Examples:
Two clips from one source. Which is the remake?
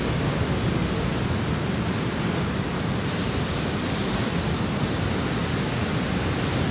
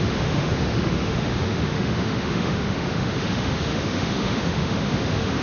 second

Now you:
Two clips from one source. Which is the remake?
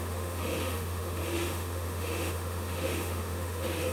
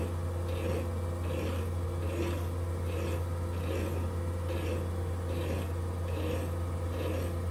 first